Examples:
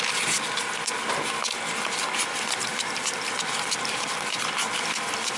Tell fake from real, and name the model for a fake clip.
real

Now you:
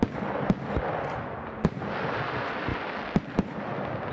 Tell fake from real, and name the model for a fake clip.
real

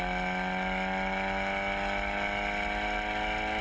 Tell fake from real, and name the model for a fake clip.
real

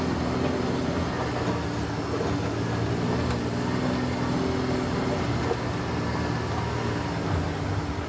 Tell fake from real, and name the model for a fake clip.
real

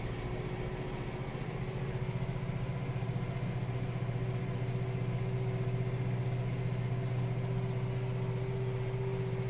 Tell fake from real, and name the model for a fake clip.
real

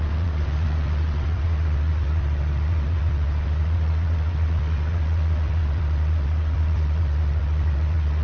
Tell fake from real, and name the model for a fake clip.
fake, vocoder, WaveNeXt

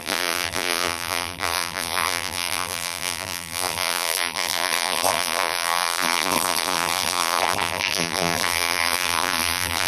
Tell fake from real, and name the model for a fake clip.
fake, vocoder, BigVGAN v2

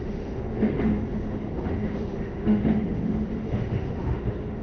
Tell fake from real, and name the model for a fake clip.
fake, autoencoder, DAC-VAE